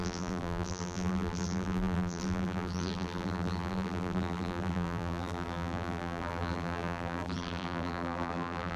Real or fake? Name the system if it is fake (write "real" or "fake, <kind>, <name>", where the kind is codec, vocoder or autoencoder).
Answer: fake, vocoder, BigVGAN v2